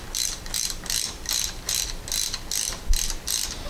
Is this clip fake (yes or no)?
no